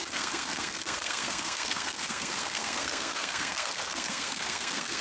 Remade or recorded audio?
remade